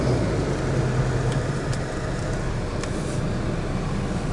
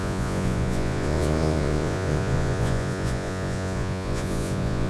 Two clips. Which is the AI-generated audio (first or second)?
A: second